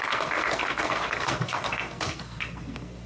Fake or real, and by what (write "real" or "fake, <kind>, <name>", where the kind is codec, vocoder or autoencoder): fake, codec, SNAC